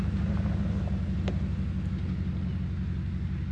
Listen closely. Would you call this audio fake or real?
real